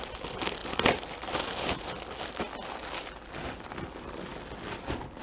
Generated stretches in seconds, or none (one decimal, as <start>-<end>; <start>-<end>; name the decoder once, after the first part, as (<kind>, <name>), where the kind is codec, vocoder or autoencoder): none